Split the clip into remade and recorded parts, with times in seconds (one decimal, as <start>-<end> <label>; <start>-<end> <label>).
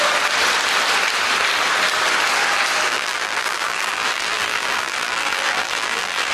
0.0-2.9 recorded; 2.9-6.3 remade